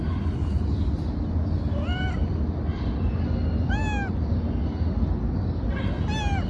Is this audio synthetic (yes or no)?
no